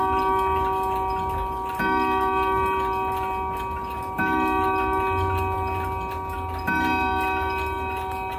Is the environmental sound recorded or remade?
recorded